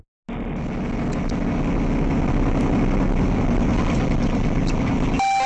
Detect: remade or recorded recorded